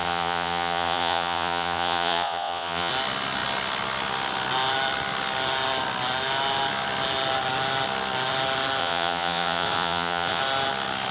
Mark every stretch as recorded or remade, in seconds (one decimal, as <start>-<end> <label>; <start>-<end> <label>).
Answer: 0.0-2.9 remade; 2.9-8.8 recorded; 8.8-10.4 remade; 10.4-11.1 recorded